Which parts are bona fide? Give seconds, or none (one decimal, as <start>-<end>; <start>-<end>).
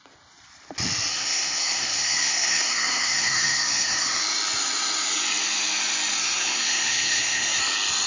0.0-1.1; 4.2-6.2; 7.6-8.1